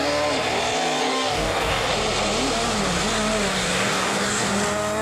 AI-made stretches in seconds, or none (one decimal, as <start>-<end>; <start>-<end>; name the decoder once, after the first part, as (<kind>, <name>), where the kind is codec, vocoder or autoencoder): 1.0-1.9 (codec, DAC); 3.5-4.5